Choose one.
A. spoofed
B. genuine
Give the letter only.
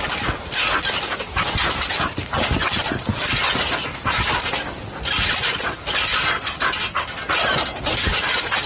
B